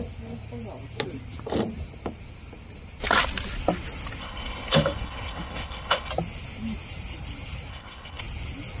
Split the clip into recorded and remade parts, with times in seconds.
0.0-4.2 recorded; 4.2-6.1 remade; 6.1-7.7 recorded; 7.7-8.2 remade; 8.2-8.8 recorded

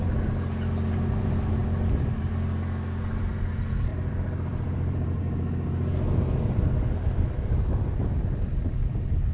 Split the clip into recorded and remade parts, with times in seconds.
0.0-3.9 recorded; 3.9-5.2 remade; 5.2-9.3 recorded

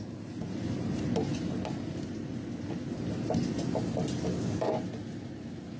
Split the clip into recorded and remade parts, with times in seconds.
0.0-4.3 recorded; 4.3-4.8 remade; 4.8-5.8 recorded

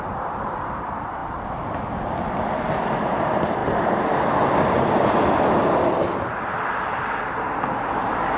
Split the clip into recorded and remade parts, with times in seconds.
0.0-8.4 recorded